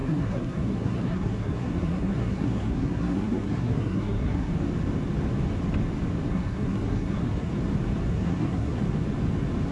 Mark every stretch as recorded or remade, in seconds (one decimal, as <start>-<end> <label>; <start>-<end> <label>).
0.0-4.5 remade; 4.5-6.3 recorded; 6.3-7.5 remade; 7.5-8.1 recorded; 8.1-8.8 remade; 8.8-9.7 recorded